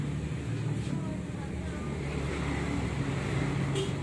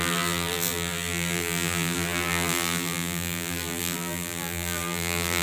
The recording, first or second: first